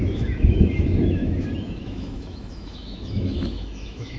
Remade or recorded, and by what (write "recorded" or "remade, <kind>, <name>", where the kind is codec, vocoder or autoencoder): remade, autoencoder, DAC-VAE